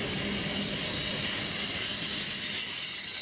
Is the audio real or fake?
real